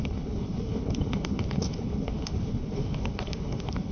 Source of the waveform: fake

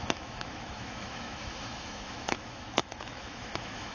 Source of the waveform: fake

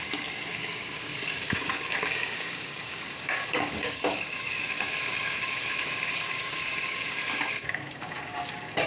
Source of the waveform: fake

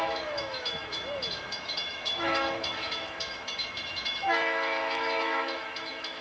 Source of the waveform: fake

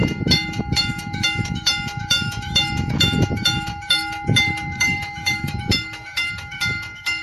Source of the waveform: fake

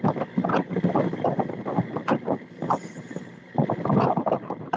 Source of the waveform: fake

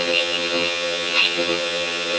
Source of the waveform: fake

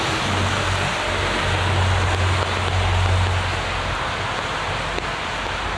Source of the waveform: real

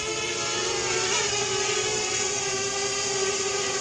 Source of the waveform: real